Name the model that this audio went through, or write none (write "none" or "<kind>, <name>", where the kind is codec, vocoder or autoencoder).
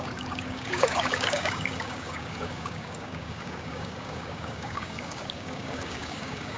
codec, DAC